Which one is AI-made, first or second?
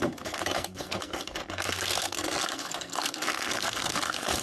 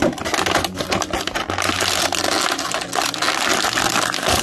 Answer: first